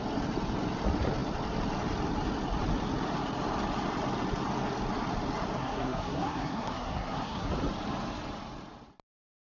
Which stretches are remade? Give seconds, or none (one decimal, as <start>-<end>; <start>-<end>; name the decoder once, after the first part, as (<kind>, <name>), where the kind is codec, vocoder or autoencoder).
5.6-7.5 (codec, SNAC)